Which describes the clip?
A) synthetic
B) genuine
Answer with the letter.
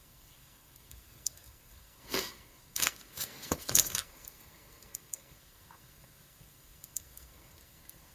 A